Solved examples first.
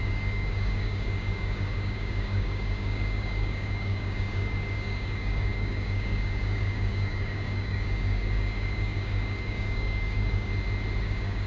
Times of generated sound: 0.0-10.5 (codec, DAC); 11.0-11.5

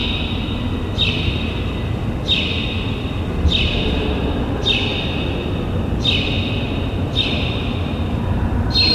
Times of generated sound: none

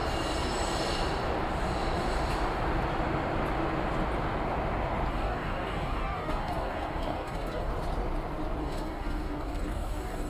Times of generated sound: 5.1-7.7 (codec, DAC); 8.6-10.3

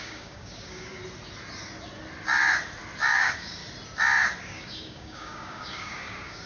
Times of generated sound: 0.0-1.0 (codec, DAC); 3.1-3.6; 4.4-6.5